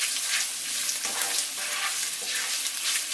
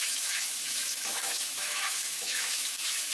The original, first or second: first